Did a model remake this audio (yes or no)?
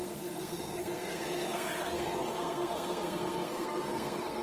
yes